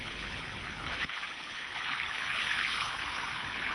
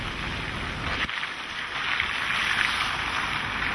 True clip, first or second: second